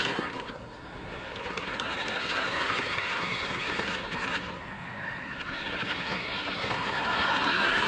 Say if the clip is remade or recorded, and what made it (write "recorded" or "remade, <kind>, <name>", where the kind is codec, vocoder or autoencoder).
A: remade, codec, SNAC